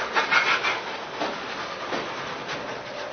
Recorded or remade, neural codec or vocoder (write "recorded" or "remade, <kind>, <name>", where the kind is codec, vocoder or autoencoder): recorded